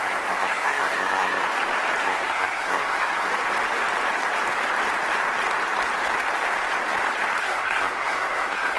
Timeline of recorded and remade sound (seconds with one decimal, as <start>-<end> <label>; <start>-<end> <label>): 0.0-1.4 remade; 1.4-2.0 recorded; 2.0-3.3 remade; 3.3-7.4 recorded; 7.4-8.8 remade